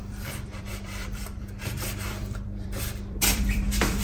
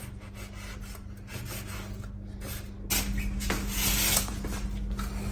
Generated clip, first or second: first